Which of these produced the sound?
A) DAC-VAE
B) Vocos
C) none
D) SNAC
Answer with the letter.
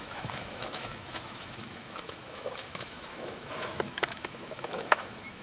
A